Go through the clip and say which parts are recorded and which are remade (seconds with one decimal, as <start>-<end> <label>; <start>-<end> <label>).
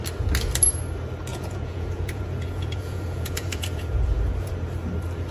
0.0-1.3 recorded; 1.3-4.5 remade; 4.5-5.3 recorded